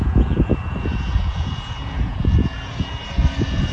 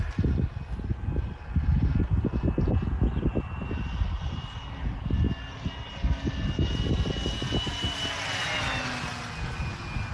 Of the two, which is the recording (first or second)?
second